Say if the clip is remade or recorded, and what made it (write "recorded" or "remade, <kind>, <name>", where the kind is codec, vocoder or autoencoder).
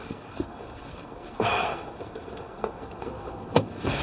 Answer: remade, codec, SNAC